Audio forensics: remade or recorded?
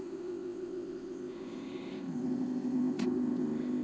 remade